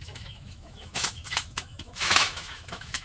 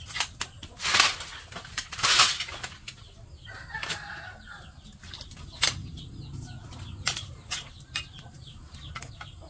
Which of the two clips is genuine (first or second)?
second